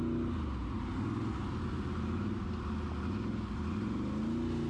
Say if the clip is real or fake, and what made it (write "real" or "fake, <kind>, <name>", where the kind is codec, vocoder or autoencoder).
real